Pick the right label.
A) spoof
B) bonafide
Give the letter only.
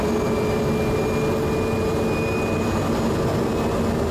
B